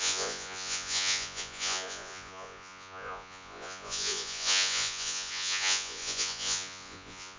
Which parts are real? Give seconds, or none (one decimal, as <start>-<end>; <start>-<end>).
none